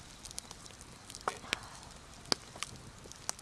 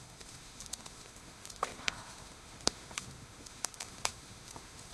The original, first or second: first